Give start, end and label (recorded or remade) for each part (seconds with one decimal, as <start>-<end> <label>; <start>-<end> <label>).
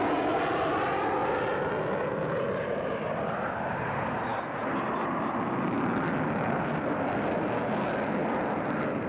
0.0-9.1 recorded